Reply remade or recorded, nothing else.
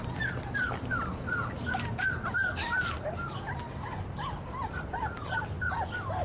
recorded